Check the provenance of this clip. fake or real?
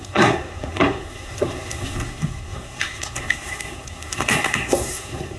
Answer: fake